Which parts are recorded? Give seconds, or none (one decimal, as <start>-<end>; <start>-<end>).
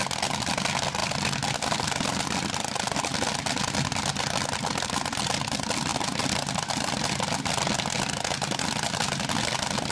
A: 0.0-9.9